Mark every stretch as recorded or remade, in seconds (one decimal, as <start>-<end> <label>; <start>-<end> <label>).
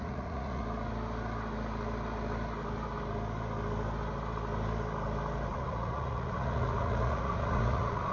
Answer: 0.0-0.6 remade; 0.6-5.5 recorded; 5.5-8.1 remade